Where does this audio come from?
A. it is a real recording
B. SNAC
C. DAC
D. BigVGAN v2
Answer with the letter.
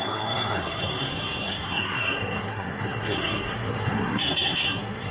B